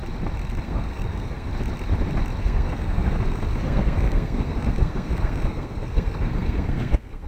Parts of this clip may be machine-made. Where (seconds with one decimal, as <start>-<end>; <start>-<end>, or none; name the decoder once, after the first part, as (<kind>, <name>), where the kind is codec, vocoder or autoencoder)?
0.6-1.5 (codec, SNAC); 2.4-7.3